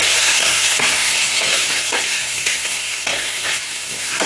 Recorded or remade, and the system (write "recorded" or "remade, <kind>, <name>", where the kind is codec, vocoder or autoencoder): remade, codec, SNAC